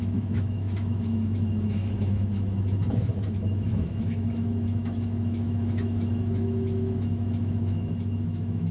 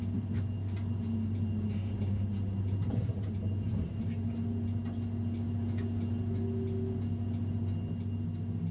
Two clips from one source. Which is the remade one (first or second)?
first